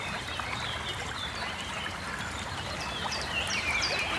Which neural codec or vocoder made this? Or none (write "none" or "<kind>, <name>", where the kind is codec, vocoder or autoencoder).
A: vocoder, BigVGAN v2